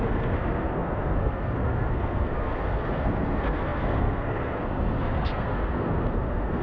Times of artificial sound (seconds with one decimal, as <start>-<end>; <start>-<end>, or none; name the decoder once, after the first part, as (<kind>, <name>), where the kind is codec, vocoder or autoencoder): 0.0-6.6 (codec, SNAC)